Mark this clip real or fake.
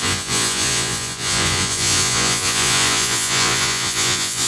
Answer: fake